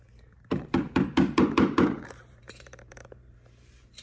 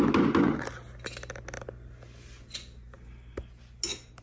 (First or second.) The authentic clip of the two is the second